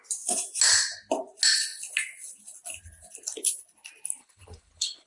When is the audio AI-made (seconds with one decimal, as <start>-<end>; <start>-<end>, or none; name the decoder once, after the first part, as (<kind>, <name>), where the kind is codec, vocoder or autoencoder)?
4.2-5.1 (codec, HILCodec)